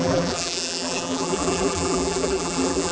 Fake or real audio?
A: fake